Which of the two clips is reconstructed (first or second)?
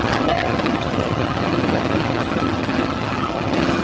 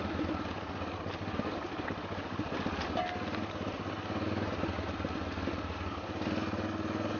first